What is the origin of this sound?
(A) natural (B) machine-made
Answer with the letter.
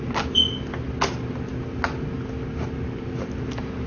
A